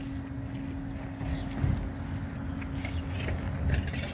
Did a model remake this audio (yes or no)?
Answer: no